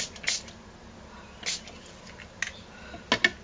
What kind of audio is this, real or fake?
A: real